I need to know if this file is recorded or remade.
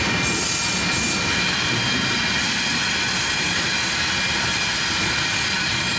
recorded